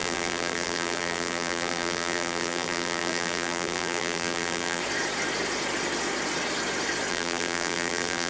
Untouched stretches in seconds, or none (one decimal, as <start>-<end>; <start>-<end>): 4.8-7.1